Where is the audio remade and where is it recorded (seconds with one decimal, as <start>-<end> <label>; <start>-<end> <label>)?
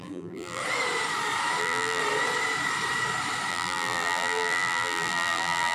0.0-0.6 remade; 0.6-1.6 recorded; 1.6-2.0 remade; 2.0-3.5 recorded; 3.5-5.7 remade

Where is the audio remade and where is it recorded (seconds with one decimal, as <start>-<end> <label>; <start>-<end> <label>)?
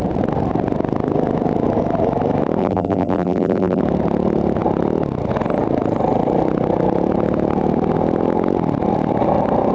0.0-2.6 recorded; 2.6-3.8 remade; 3.8-9.7 recorded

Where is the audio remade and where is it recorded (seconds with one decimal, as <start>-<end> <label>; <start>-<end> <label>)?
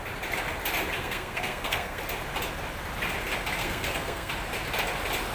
0.0-1.0 recorded; 1.0-2.0 remade; 2.0-3.6 recorded; 3.6-4.3 remade; 4.3-5.3 recorded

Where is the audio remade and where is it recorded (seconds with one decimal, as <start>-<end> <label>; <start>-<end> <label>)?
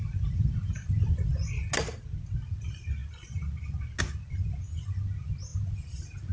0.0-6.3 recorded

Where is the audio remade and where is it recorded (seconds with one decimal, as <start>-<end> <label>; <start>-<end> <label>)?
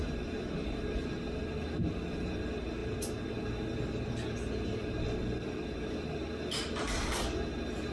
0.0-7.9 recorded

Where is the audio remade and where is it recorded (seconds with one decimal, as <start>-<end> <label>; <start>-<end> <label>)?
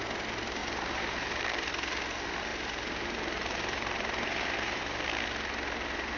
0.0-0.6 recorded; 0.6-1.7 remade; 1.7-2.5 recorded; 2.5-4.8 remade; 4.8-6.2 recorded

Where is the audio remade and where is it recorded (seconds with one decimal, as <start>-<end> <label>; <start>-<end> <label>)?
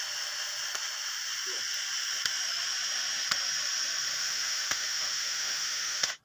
0.0-4.2 recorded; 4.2-6.2 remade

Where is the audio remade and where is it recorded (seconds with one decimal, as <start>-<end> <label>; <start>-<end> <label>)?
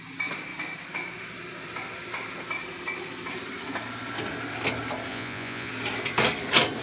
0.0-5.1 recorded; 5.1-5.7 remade; 5.7-6.8 recorded